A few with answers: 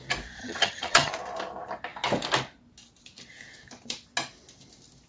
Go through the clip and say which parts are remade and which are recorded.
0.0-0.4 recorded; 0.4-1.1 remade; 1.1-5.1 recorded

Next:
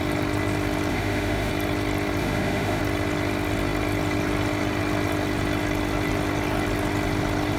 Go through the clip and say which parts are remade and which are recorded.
0.0-0.9 recorded; 0.9-1.5 remade; 1.5-2.2 recorded; 2.2-2.8 remade; 2.8-7.6 recorded

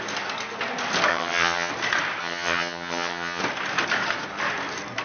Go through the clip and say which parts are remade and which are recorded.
0.0-1.1 recorded; 1.1-1.7 remade; 1.7-2.2 recorded; 2.2-3.4 remade; 3.4-5.0 recorded

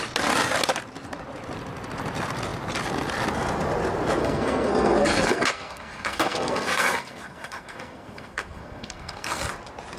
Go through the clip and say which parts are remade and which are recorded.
0.0-4.2 recorded; 4.2-9.4 remade; 9.4-10.0 recorded

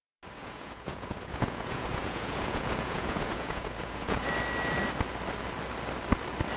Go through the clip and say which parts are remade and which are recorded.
0.0-0.4 recorded; 0.4-4.3 remade; 4.3-6.6 recorded

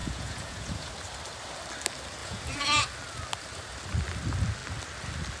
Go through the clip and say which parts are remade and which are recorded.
0.0-0.9 remade; 0.9-2.2 recorded; 2.2-2.8 remade; 2.8-5.4 recorded

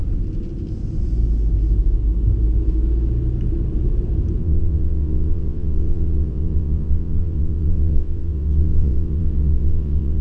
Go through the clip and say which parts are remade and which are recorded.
0.0-4.4 recorded; 4.4-10.2 remade

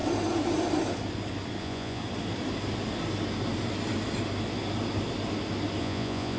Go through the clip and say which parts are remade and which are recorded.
0.0-1.6 recorded; 1.6-2.0 remade; 2.0-5.8 recorded; 5.8-6.4 remade